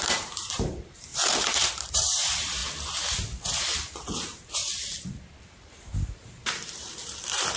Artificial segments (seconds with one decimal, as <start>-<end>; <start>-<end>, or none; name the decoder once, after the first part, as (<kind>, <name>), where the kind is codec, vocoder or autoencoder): 0.0-2.6 (vocoder, BigVGAN v2); 3.6-4.6; 5.4-7.6